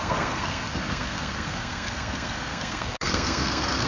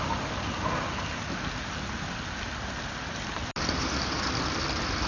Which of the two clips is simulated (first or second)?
first